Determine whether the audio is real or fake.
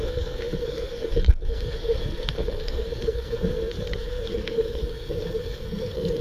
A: fake